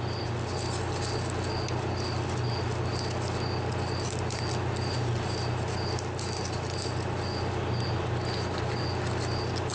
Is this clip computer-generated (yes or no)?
no